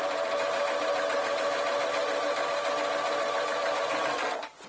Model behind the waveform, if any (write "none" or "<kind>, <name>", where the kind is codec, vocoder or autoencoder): none